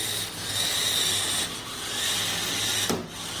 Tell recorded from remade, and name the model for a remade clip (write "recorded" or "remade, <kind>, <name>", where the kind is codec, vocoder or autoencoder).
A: recorded